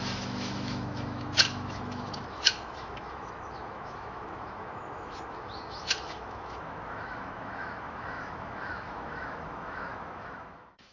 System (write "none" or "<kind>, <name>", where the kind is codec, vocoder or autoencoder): autoencoder, DAC-VAE